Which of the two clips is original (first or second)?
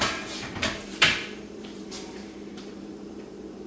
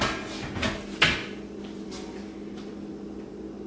second